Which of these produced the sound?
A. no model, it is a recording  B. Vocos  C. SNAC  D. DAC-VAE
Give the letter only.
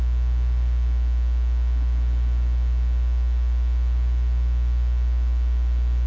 A